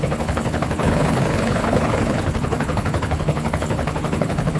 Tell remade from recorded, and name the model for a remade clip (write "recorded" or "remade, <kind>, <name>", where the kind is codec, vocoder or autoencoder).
remade, codec, HILCodec